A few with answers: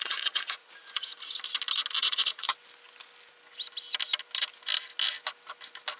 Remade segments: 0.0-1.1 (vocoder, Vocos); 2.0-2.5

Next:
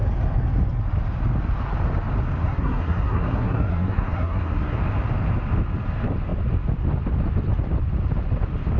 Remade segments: 2.4-4.8 (codec, SNAC)